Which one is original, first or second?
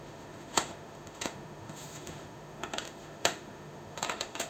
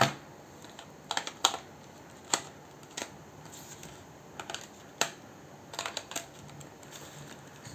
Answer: second